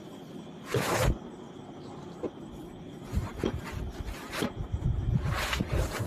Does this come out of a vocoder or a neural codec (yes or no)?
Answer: no